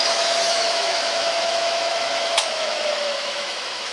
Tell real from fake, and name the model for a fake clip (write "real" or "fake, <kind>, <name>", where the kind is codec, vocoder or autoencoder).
fake, autoencoder, DAC-VAE